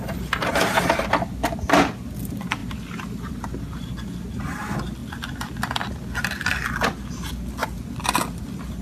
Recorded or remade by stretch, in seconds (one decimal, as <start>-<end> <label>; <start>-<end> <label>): 0.0-2.6 recorded; 2.6-3.3 remade; 3.3-5.0 recorded; 5.0-5.9 remade; 5.9-7.6 recorded; 7.6-8.8 remade